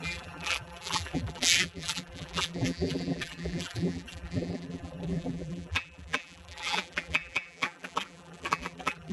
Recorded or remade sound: remade